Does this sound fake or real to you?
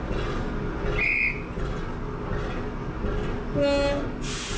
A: real